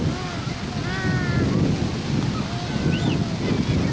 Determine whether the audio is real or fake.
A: real